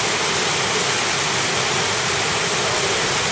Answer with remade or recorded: recorded